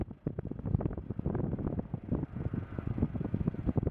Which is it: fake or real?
real